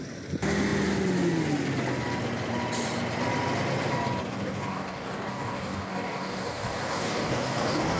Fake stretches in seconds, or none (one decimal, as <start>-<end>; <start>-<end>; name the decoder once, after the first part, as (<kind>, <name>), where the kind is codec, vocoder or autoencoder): 4.3-8.0 (codec, DAC)